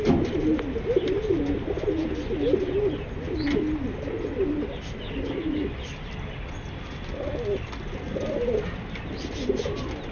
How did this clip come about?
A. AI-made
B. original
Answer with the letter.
B